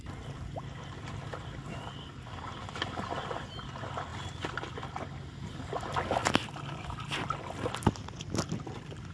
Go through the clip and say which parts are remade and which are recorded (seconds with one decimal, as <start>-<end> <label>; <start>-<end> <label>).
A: 0.0-9.1 recorded